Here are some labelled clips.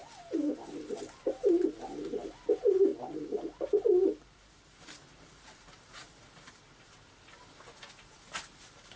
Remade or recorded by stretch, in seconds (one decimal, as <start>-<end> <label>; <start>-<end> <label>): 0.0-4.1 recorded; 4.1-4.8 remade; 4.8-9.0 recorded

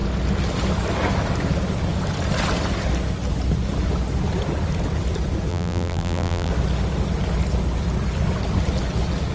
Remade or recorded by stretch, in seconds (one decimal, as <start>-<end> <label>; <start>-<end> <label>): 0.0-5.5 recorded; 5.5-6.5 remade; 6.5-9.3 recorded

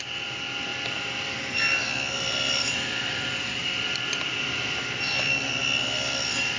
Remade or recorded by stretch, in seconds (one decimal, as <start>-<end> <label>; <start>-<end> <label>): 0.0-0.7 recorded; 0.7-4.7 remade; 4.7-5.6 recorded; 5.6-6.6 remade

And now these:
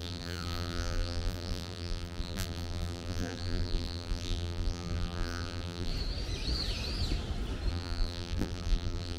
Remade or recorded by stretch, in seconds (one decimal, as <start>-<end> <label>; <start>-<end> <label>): 0.0-5.9 remade; 5.9-7.7 recorded; 7.7-9.2 remade

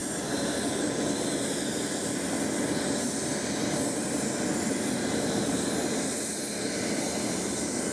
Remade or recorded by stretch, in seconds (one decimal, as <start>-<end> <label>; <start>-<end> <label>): 0.0-3.7 recorded; 3.7-6.4 remade; 6.4-7.3 recorded; 7.3-7.9 remade

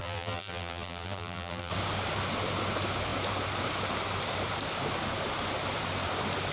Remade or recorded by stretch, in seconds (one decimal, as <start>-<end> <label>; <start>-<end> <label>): 0.0-1.7 remade; 1.7-6.5 recorded